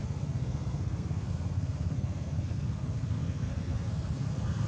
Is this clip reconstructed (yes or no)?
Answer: yes